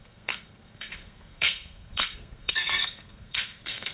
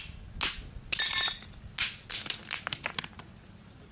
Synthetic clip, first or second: first